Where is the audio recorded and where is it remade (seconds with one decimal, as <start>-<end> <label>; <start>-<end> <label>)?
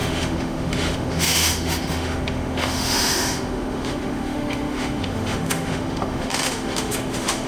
0.0-7.5 remade